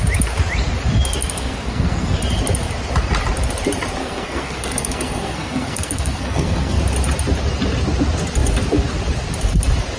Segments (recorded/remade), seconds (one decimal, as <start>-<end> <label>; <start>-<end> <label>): 0.0-1.2 recorded; 1.2-2.2 remade; 2.2-4.0 recorded; 4.0-6.8 remade; 6.8-10.0 recorded